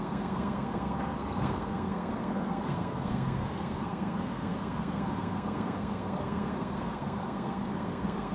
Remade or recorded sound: remade